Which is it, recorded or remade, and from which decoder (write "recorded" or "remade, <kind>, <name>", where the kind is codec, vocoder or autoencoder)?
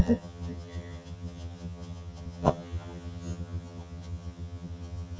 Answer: remade, vocoder, HiFi-GAN